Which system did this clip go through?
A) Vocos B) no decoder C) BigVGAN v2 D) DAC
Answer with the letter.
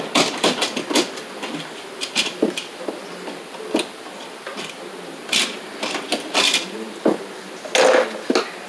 B